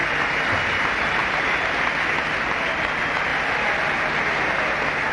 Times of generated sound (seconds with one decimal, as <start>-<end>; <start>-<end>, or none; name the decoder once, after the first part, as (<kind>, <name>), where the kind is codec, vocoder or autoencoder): 1.2-1.9 (vocoder, BigVGAN v2); 3.3-4.2